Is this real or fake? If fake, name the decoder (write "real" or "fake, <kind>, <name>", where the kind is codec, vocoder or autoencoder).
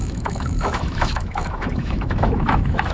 fake, autoencoder, DAC-VAE